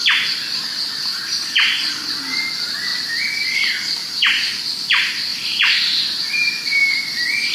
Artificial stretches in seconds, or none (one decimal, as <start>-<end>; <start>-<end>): 4.0-4.6; 5.3-6.6